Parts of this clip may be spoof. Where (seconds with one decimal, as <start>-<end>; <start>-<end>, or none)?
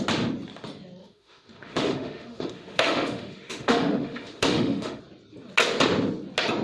1.0-5.0